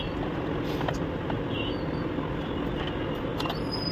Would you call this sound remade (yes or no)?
no